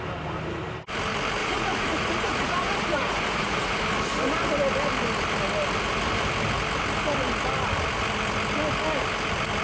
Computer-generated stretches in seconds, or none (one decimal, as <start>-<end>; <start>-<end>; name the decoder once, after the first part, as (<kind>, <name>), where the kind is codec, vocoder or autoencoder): 1.4-3.8 (vocoder, Vocos)